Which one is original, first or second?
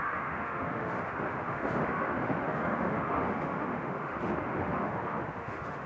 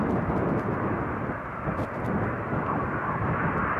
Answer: second